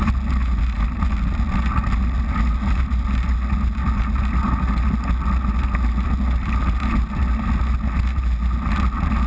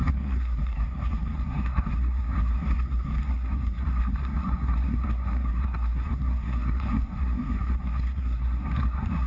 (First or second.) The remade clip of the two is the second